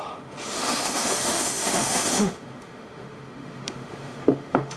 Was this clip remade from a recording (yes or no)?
yes